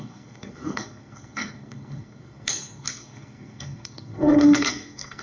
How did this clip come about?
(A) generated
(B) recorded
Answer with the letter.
A